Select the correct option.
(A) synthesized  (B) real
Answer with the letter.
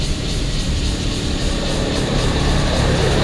A